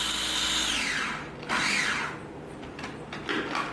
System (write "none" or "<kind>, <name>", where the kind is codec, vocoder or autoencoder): none